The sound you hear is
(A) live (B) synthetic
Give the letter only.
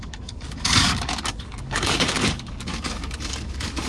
B